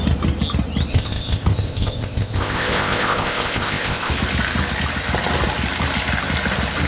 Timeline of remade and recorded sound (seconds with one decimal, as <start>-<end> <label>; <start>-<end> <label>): 0.0-0.9 recorded; 0.9-4.1 remade; 4.1-6.9 recorded